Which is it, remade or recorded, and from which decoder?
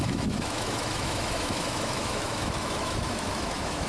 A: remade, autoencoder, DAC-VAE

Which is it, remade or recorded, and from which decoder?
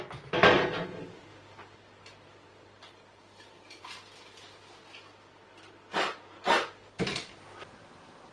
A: recorded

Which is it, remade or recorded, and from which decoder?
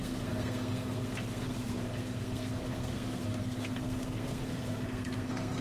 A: remade, codec, SNAC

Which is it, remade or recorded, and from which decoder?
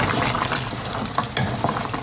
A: recorded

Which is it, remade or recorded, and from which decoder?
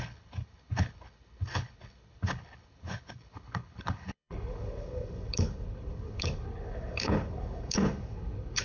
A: remade, codec, HILCodec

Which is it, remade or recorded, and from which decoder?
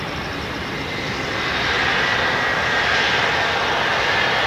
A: recorded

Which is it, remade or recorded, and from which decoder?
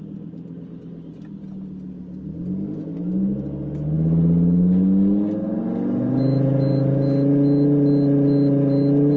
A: recorded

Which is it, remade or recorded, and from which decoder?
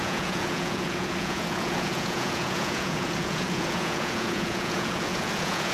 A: remade, vocoder, Vocos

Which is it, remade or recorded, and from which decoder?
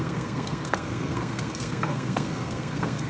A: remade, codec, SNAC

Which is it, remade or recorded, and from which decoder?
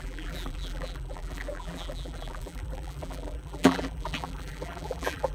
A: remade, vocoder, BigVGAN v2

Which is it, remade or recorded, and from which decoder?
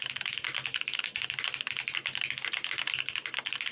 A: recorded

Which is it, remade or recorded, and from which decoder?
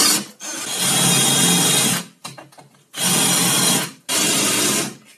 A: recorded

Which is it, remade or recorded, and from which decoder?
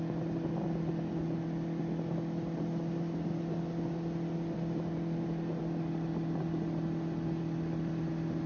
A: recorded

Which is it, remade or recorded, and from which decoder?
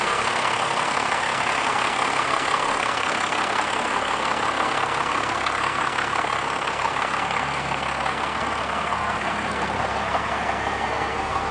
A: remade, codec, SNAC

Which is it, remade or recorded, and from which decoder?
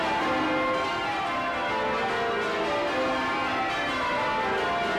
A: recorded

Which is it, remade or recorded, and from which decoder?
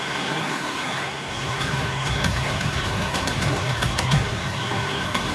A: remade, codec, SNAC